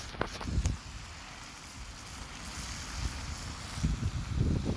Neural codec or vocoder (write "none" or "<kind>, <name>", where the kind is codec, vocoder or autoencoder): none